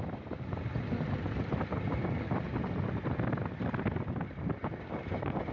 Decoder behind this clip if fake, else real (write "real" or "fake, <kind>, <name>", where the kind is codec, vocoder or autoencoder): real